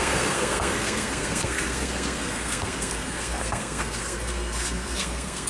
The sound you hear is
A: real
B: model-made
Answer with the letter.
B